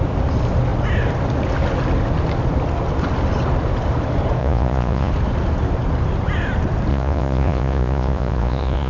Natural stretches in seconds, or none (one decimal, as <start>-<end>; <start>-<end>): 0.0-4.4; 5.1-6.9